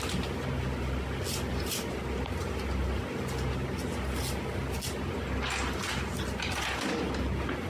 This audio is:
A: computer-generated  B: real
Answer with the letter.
B